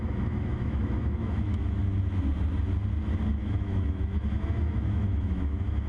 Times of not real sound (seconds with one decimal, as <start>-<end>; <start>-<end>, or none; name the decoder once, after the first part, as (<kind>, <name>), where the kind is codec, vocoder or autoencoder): 0.0-1.8 (autoencoder, DAC-VAE); 3.3-5.9